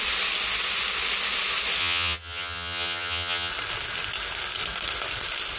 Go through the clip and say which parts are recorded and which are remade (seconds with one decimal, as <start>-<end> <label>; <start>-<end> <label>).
0.0-1.8 recorded; 1.8-3.5 remade; 3.5-5.6 recorded